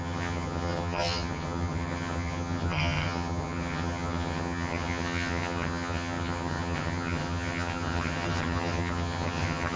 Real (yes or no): no